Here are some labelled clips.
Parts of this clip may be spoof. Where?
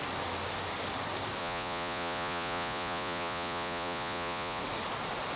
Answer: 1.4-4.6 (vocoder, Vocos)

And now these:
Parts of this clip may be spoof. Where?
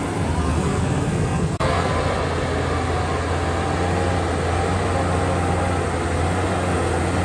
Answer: 0.5-1.9 (codec, SNAC)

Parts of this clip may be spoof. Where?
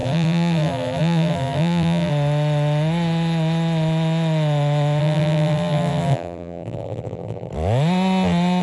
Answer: 0.0-2.1 (vocoder, BigVGAN v2); 5.0-7.5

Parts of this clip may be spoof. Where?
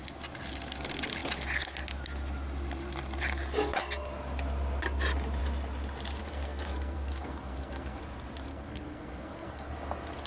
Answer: 6.2-8.0 (codec, SNAC); 8.5-9.7